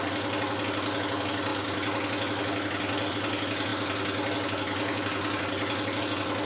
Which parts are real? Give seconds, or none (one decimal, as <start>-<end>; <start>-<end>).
0.0-6.4